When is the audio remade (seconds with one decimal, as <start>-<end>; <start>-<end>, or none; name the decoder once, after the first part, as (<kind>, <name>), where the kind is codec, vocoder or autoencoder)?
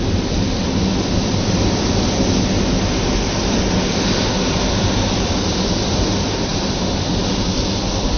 none